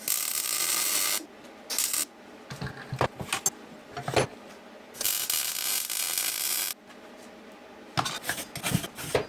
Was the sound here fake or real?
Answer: real